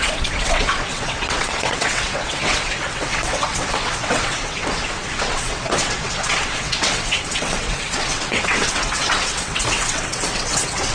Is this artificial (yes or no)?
yes